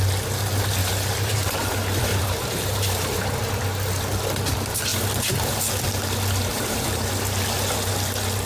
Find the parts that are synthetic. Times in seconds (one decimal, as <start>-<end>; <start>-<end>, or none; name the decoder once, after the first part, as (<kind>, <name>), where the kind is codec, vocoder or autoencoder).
0.8-1.7 (vocoder, BigVGAN v2); 2.1-3.2; 4.9-5.7; 6.5-7.1